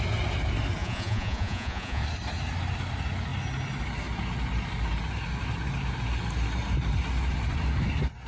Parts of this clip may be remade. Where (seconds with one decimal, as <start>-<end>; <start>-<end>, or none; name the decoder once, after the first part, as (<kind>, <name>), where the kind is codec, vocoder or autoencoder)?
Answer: 0.8-2.0 (vocoder, Vocos)